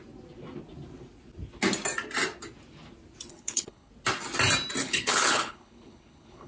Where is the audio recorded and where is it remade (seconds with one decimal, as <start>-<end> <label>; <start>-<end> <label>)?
0.0-3.3 recorded; 3.3-3.9 remade; 3.9-4.8 recorded; 4.8-6.5 remade